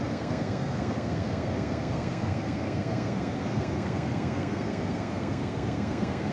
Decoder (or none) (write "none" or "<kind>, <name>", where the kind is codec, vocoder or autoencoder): codec, SNAC